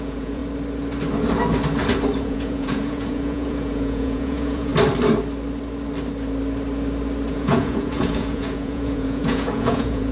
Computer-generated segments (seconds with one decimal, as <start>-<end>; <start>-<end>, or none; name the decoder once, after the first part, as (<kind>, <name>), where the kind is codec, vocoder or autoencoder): 0.0-0.4 (vocoder, Vocos); 2.2-4.7; 7.3-10.1